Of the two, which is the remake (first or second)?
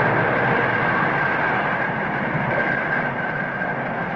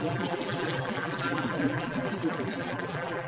second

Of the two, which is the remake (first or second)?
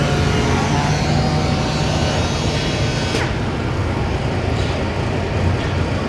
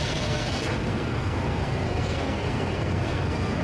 second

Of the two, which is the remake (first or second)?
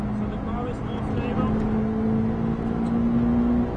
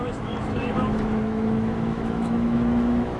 second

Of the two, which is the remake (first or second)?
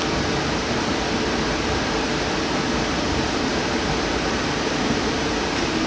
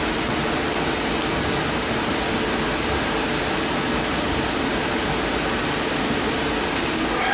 first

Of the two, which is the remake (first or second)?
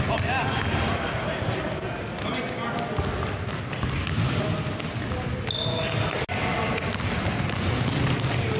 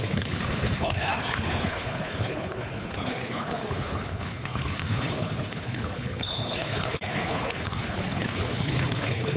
second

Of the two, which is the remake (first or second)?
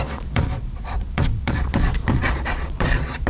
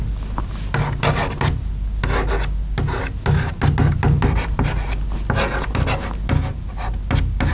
first